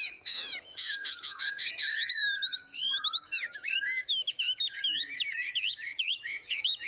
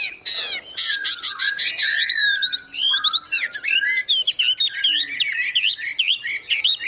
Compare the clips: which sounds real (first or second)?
second